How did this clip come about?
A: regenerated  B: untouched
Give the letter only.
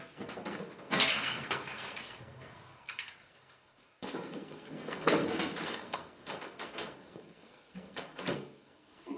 A